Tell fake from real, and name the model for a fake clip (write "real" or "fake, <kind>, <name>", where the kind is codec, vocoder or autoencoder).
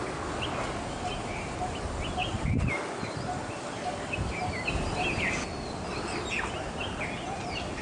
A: real